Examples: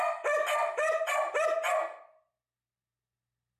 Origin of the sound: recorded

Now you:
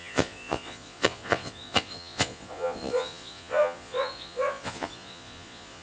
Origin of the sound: remade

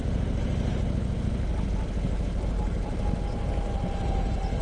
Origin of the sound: recorded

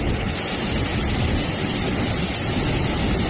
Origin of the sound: recorded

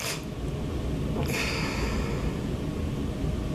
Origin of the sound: recorded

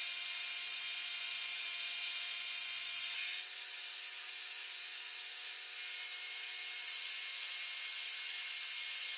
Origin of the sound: remade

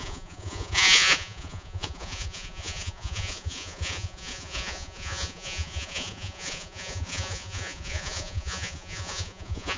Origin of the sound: remade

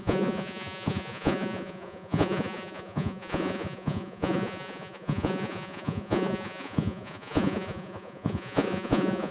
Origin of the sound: remade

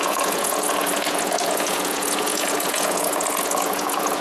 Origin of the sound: remade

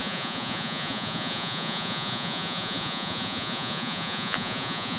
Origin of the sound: remade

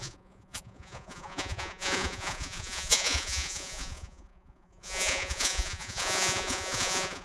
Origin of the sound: remade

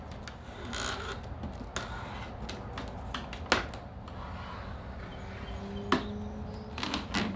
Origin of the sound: recorded